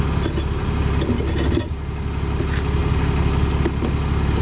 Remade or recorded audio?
recorded